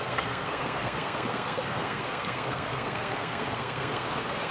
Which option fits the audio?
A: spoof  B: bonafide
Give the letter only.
A